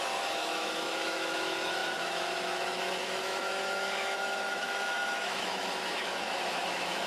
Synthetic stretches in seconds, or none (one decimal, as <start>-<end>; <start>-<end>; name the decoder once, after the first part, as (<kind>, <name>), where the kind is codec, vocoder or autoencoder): 0.0-7.1 (autoencoder, DAC-VAE)